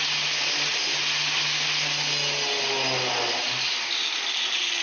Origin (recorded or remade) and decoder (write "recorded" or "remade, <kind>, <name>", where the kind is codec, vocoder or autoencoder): recorded